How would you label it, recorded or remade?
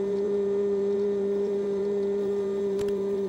remade